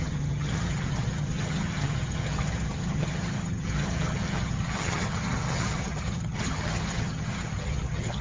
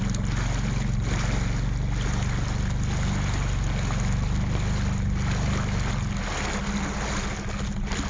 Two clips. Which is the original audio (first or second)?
second